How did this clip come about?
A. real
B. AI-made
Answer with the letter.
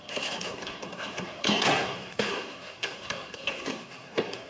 B